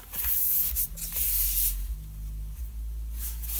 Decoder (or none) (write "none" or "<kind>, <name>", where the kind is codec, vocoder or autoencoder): none